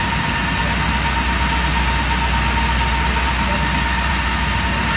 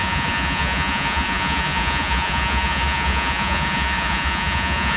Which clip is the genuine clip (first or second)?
first